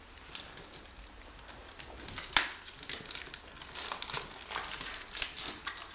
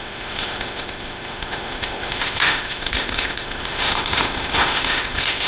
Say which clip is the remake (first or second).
second